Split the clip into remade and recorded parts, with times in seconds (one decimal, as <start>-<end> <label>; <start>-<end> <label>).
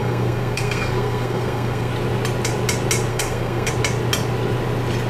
0.0-1.9 remade; 1.9-3.1 recorded; 3.1-3.7 remade; 3.7-5.1 recorded